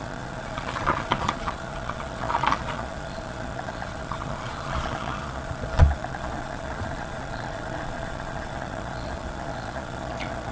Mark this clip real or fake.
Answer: fake